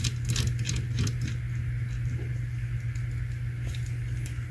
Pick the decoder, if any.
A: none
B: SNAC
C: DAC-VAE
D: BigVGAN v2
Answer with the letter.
A